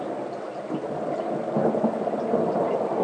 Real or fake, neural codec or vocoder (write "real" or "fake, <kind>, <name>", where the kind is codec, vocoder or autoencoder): real